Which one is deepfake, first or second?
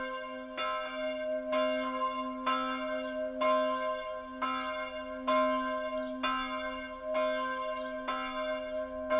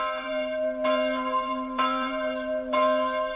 second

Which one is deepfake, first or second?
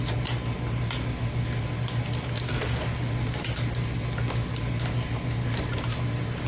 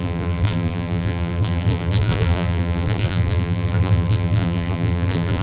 second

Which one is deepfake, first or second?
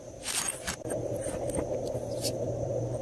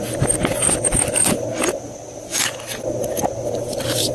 first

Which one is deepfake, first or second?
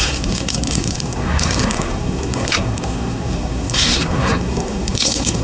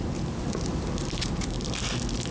first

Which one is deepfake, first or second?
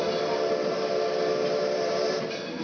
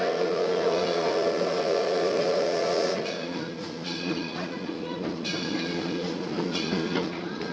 second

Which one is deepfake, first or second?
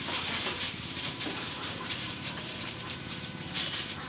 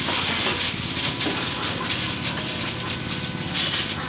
first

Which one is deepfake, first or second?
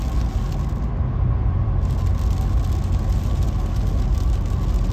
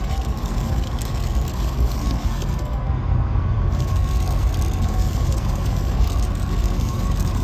second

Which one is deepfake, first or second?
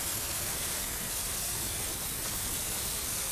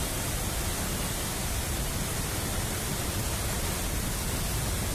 first